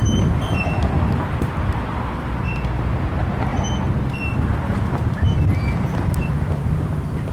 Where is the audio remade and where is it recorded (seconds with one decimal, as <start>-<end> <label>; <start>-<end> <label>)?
0.0-3.5 remade; 3.5-4.3 recorded; 4.3-7.3 remade